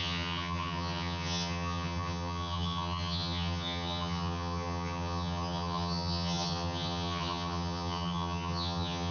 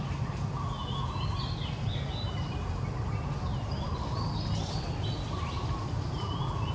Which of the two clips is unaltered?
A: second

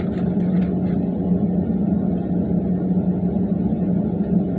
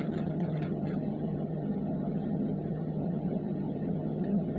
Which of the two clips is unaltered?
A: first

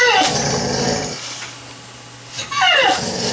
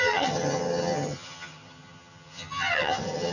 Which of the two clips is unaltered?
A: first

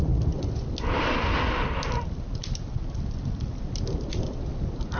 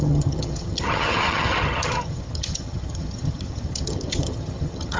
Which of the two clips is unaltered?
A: first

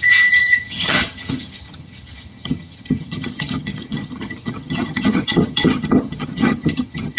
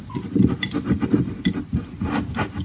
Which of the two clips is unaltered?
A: second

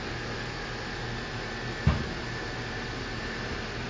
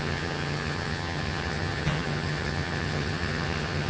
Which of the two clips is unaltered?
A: first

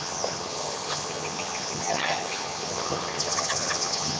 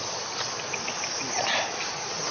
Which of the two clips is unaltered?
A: second